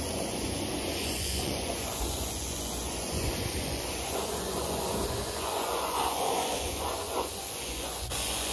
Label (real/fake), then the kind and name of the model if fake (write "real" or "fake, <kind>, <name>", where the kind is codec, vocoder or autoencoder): fake, vocoder, Vocos